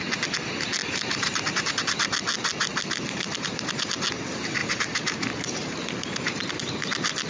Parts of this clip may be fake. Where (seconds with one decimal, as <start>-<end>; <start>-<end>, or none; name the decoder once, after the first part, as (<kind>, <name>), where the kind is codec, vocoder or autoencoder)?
0.8-1.4 (vocoder, BigVGAN v2); 2.7-3.5; 4.6-6.7